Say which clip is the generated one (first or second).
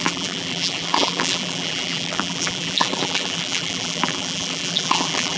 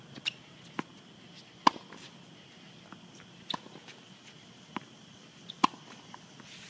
first